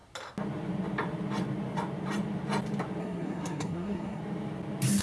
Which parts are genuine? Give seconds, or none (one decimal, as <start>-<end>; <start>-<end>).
0.0-3.0; 4.2-5.0